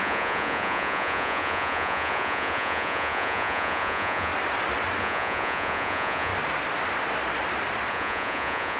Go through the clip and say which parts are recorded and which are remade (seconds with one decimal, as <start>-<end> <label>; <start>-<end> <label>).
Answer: 0.0-4.3 remade; 4.3-5.0 recorded; 5.0-6.3 remade; 6.3-7.9 recorded; 7.9-8.8 remade